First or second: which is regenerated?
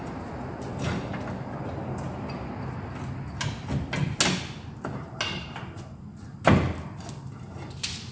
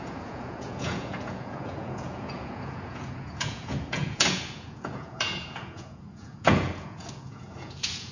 second